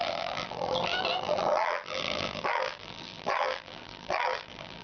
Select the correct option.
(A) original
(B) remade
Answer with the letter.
B